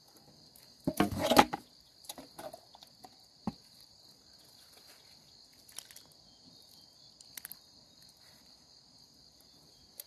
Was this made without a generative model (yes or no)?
yes